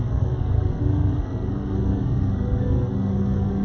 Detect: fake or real fake